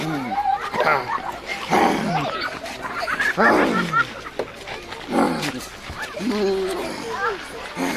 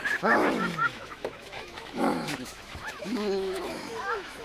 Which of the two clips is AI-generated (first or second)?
second